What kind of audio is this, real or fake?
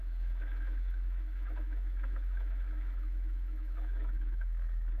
fake